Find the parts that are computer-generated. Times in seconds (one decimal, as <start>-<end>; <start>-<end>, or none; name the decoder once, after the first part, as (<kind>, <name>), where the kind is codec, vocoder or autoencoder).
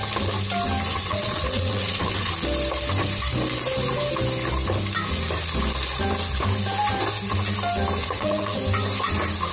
0.9-2.3 (vocoder, WaveNeXt); 8.0-8.6